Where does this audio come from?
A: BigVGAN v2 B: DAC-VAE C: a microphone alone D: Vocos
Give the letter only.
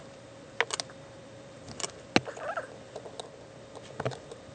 C